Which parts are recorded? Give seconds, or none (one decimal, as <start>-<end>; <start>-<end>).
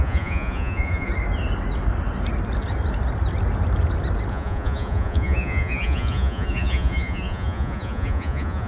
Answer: 1.1-4.3